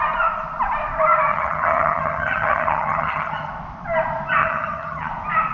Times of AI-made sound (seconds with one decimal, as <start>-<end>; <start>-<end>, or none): 1.3-3.5; 4.4-5.1